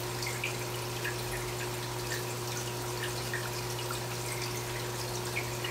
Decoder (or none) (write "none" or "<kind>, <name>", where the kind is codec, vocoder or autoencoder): none